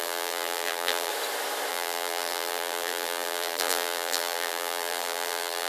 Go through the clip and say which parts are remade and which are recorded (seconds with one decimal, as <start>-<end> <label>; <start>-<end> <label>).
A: 0.0-1.1 remade; 1.1-1.7 recorded; 1.7-5.7 remade